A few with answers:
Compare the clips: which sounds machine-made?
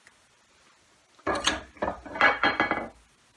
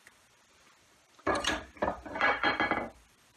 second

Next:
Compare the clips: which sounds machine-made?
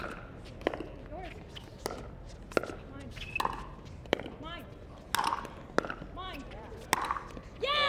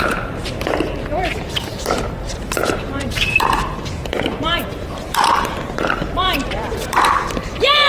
second